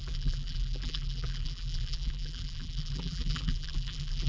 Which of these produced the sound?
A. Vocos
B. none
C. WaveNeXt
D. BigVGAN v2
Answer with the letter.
D